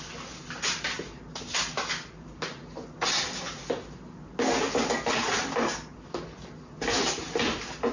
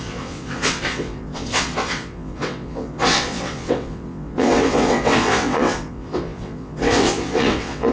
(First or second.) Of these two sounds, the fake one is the second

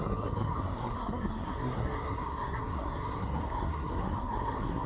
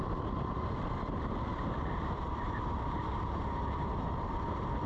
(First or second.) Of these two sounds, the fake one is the first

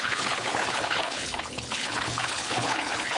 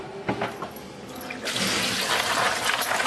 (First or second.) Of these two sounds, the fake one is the first